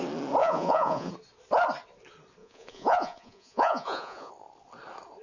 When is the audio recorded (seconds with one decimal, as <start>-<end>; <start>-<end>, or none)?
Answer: 0.0-0.4; 1.1-2.4; 4.3-5.2